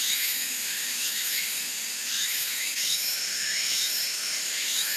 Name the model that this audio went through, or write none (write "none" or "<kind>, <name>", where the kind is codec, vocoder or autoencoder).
autoencoder, DAC-VAE